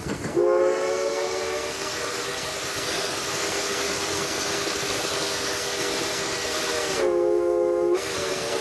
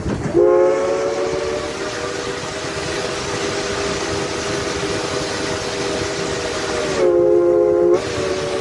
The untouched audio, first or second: second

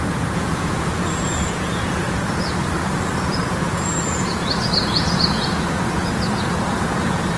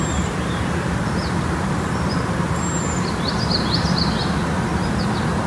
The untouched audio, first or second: second